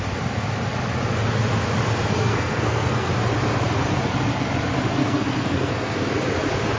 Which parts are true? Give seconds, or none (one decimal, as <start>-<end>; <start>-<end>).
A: 0.0-2.1; 3.1-5.0; 6.1-6.8